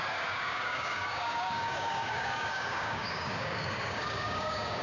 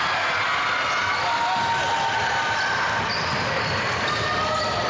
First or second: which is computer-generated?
first